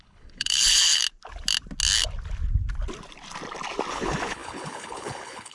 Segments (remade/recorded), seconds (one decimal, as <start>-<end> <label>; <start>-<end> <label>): 0.0-1.0 remade; 1.0-3.9 recorded; 3.9-5.5 remade